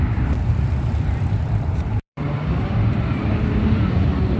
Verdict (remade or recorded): remade